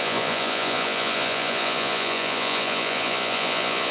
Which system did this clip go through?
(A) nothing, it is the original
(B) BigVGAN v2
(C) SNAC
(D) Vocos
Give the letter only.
D